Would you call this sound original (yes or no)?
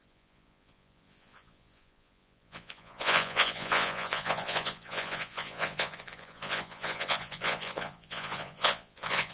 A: no